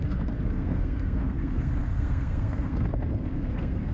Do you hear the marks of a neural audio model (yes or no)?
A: yes